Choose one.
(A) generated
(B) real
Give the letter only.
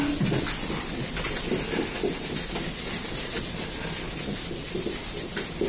B